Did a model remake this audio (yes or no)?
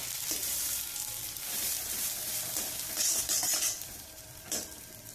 yes